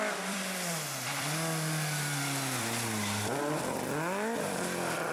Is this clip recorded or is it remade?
remade